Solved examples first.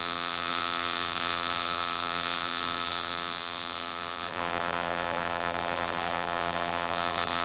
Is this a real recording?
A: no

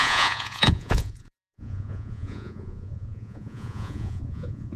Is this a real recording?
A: no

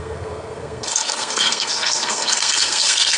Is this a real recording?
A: no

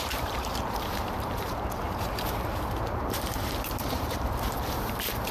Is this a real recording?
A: no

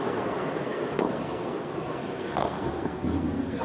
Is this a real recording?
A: no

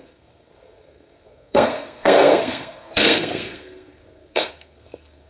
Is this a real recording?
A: no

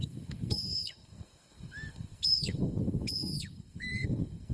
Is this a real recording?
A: no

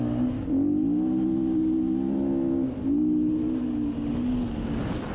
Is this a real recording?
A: yes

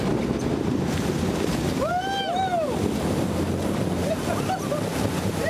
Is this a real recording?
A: yes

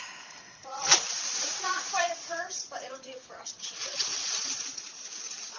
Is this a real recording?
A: no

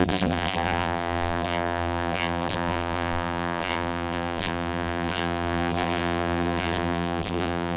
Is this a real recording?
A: no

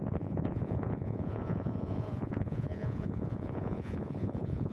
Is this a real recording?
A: no